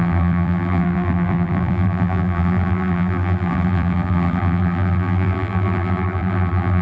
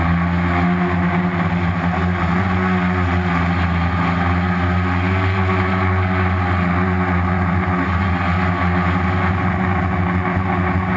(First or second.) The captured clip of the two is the second